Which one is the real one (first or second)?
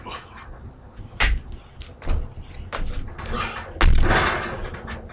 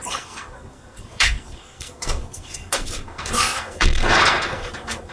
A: first